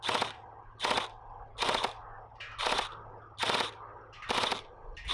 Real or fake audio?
real